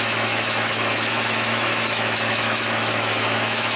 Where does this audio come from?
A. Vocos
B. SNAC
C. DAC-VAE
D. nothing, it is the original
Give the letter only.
C